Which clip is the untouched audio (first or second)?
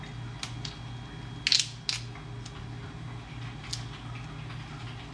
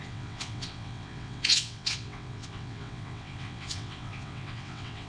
first